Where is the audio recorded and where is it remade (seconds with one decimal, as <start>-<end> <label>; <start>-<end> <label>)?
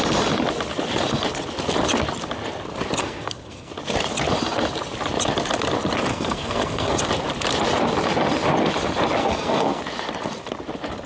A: 0.0-3.0 recorded; 3.0-3.7 remade; 3.7-6.1 recorded; 6.1-7.0 remade; 7.0-9.2 recorded; 9.2-9.8 remade; 9.8-11.1 recorded